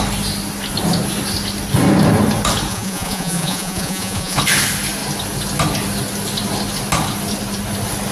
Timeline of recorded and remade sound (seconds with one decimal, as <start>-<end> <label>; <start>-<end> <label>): 0.0-2.7 recorded; 2.7-4.4 remade; 4.4-8.1 recorded